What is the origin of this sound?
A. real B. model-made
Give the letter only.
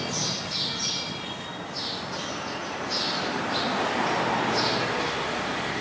A